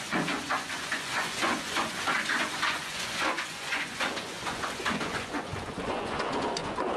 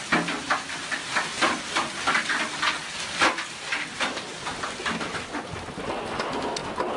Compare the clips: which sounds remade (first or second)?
first